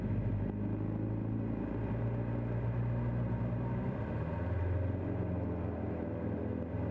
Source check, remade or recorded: recorded